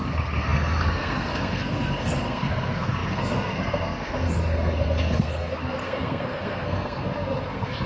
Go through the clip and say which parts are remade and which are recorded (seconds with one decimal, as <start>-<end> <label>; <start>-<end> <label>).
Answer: 0.0-7.9 remade